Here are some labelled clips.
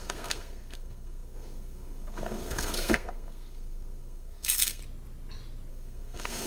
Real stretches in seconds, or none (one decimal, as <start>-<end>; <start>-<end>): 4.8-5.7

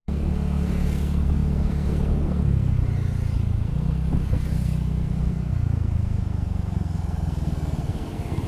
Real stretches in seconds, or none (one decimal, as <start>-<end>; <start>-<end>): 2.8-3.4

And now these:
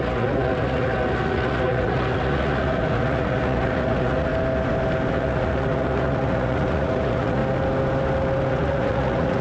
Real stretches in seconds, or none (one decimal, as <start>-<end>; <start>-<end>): 4.3-5.1; 7.4-8.5